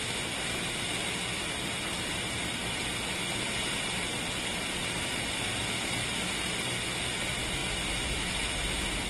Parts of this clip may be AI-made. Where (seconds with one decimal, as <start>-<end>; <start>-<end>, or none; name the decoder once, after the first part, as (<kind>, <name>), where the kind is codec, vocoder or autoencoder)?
none